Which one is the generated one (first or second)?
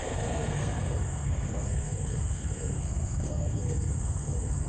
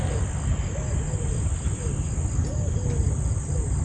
first